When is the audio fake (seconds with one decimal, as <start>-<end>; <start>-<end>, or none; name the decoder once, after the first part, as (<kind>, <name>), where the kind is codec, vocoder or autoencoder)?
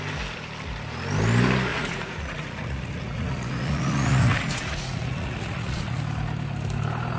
1.7-6.0 (vocoder, Vocos)